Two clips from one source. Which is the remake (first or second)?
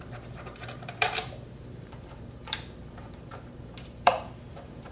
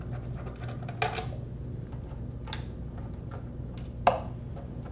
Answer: first